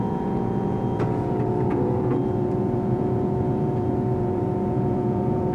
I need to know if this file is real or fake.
fake